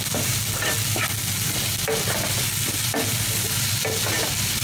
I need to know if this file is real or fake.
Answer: real